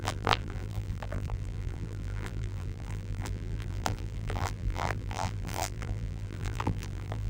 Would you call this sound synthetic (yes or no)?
yes